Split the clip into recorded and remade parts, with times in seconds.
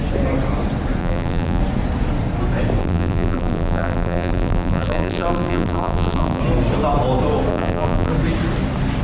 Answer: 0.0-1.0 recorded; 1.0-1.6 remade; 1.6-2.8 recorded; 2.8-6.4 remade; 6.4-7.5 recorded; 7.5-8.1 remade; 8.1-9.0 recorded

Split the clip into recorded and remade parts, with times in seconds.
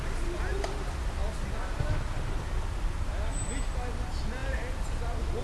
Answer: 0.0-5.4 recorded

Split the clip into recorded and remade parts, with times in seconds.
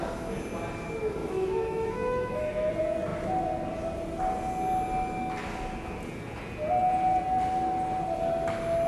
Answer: 0.0-1.2 recorded; 1.2-2.7 remade; 2.7-8.9 recorded